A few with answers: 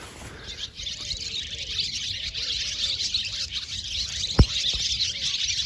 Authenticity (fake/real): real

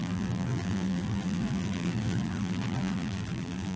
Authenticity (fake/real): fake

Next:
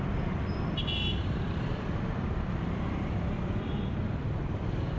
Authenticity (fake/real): fake